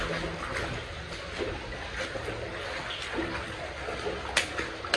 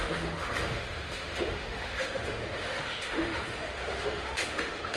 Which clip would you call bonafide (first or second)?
first